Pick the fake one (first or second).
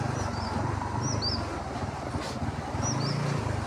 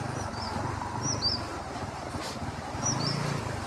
second